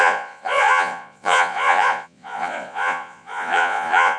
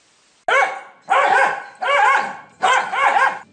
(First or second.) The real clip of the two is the second